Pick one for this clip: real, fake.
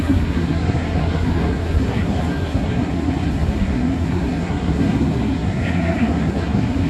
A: fake